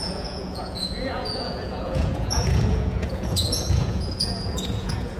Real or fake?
fake